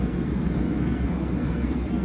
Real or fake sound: fake